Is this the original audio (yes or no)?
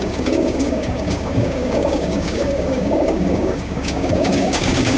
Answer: no